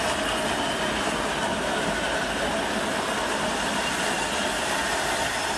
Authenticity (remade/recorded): recorded